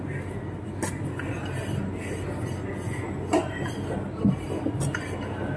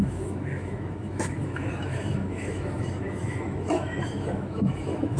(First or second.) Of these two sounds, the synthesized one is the second